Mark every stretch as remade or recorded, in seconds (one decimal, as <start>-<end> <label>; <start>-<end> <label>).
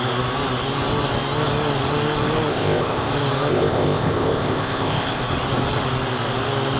0.0-2.5 recorded; 2.5-3.1 remade; 3.1-3.5 recorded; 3.5-5.2 remade; 5.2-6.8 recorded